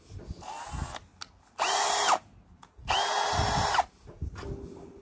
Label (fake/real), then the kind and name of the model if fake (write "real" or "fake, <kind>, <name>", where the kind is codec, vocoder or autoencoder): real